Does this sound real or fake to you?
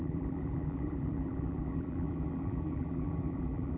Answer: fake